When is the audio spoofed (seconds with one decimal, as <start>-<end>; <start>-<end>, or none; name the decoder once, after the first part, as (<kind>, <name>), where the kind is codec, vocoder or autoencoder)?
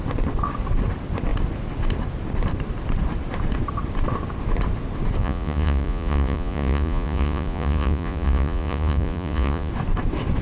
5.2-9.7 (vocoder, Vocos)